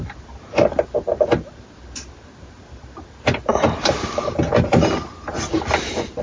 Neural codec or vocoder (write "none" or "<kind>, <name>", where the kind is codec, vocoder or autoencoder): none